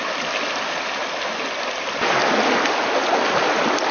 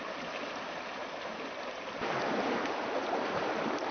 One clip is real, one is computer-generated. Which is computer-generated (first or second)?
second